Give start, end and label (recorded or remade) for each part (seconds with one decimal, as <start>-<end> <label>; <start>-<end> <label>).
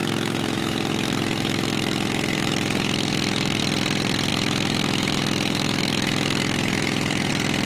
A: 0.0-3.6 remade; 3.6-4.3 recorded; 4.3-7.3 remade; 7.3-7.7 recorded